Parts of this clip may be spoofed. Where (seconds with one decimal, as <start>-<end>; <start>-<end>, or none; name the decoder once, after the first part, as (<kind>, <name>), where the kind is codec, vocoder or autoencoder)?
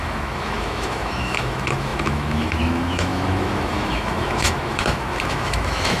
0.0-6.0 (autoencoder, DAC-VAE)